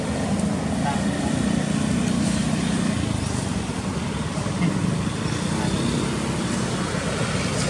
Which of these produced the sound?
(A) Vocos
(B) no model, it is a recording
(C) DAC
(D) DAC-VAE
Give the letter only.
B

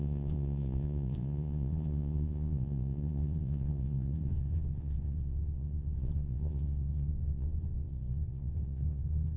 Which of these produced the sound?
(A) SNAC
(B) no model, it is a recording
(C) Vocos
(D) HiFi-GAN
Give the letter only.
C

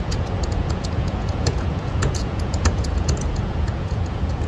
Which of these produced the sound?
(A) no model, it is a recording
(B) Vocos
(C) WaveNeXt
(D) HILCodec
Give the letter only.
B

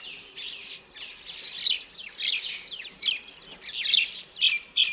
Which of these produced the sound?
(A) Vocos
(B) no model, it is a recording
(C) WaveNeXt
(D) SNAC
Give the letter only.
B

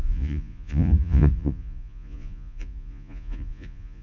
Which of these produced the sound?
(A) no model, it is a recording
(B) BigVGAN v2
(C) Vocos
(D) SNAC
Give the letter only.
C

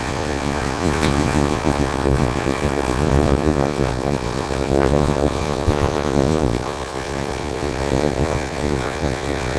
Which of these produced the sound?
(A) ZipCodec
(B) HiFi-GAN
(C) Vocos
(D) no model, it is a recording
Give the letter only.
C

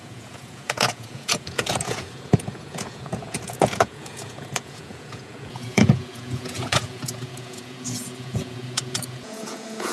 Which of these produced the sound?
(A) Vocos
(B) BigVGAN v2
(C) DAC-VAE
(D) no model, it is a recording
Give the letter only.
A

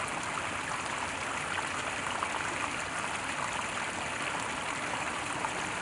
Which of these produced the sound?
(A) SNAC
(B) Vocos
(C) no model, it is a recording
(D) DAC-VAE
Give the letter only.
C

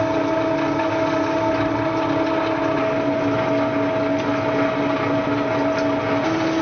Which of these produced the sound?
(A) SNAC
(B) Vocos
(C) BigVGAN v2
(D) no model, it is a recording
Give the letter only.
D